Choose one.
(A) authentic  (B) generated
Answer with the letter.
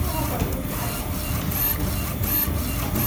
A